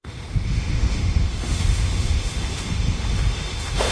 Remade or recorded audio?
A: remade